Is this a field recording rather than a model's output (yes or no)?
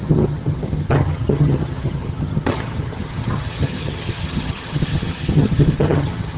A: no